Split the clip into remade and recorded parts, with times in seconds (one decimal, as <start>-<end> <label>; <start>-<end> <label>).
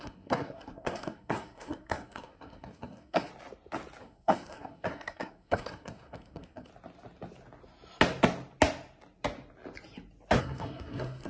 0.0-3.3 remade; 3.3-4.0 recorded; 4.0-6.7 remade; 6.7-10.4 recorded; 10.4-11.3 remade